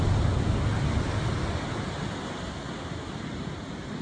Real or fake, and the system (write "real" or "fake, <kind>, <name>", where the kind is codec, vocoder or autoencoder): real